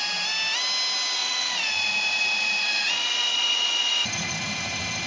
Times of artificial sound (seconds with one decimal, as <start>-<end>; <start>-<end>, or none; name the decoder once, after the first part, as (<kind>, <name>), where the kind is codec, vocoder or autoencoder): 1.2-4.3 (vocoder, Vocos)